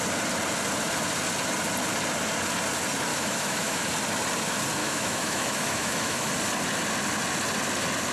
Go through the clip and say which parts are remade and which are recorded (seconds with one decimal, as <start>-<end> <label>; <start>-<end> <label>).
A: 0.0-3.1 recorded; 3.1-3.9 remade; 3.9-4.8 recorded; 4.8-6.3 remade; 6.3-8.1 recorded